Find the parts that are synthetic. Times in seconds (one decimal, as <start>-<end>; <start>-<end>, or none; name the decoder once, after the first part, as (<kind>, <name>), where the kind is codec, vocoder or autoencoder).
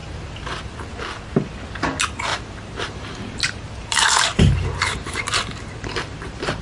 0.0-1.0 (vocoder, BigVGAN v2); 2.3-6.6